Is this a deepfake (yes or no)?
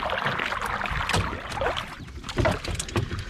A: no